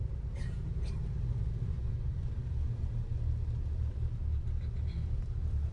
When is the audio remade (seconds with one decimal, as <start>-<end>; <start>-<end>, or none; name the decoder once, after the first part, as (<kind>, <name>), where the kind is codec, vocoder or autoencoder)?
0.0-1.8 (vocoder, BigVGAN v2); 5.2-5.7